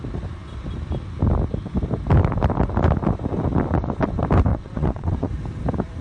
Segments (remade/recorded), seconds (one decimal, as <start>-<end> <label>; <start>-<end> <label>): 0.0-4.5 recorded; 4.5-5.3 remade; 5.3-6.0 recorded